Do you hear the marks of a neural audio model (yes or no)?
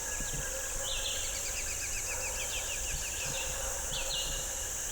no